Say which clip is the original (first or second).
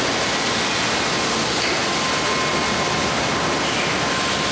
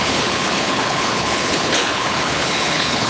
first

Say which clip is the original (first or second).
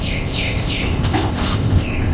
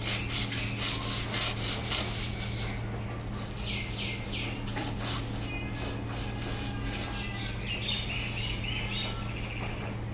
second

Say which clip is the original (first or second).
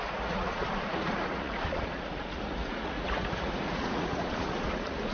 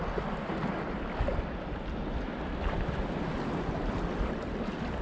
second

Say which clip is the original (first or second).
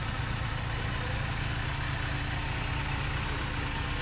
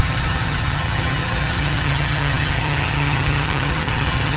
first